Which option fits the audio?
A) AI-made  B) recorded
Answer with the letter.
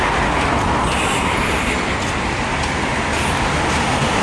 B